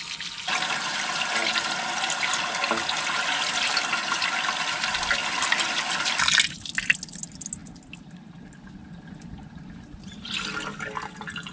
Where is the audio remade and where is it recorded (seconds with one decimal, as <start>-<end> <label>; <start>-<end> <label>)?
0.0-11.5 recorded